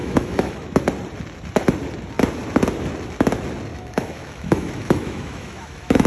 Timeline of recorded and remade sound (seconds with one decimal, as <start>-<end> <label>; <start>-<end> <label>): 0.0-0.8 remade; 0.8-3.7 recorded; 3.7-6.1 remade